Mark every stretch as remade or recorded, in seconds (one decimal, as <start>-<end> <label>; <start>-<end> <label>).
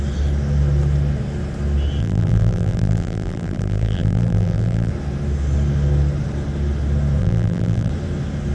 0.0-2.0 recorded; 2.0-4.9 remade; 4.9-7.2 recorded; 7.2-7.9 remade; 7.9-8.5 recorded